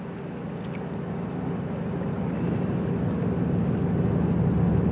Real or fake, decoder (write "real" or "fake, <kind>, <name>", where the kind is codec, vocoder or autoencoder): real